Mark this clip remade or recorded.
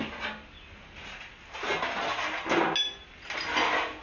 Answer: recorded